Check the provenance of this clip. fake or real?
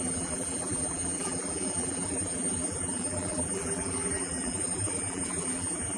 fake